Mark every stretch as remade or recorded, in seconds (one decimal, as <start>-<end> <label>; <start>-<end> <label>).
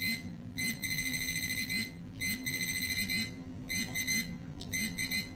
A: 0.0-5.4 remade